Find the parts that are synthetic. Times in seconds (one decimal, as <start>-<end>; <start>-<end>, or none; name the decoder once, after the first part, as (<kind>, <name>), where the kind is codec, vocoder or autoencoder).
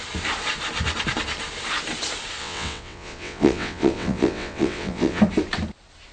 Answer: 2.4-5.2 (vocoder, WaveNeXt)